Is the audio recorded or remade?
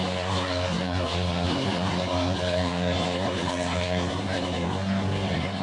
remade